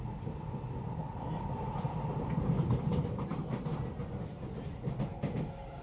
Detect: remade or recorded recorded